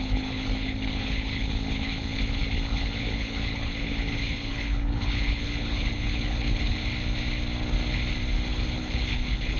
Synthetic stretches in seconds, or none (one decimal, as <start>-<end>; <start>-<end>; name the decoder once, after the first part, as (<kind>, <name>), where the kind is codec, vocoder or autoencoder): 0.0-6.8 (codec, HILCodec); 8.5-9.6